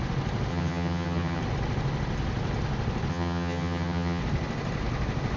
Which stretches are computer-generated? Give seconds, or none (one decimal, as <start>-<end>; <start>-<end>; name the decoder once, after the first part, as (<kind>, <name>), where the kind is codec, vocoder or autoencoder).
0.5-1.4 (vocoder, HiFi-GAN); 3.1-4.2